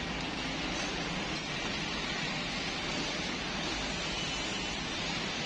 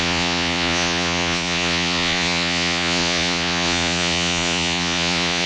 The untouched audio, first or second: first